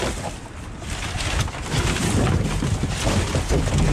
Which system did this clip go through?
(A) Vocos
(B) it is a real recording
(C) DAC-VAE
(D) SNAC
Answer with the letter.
B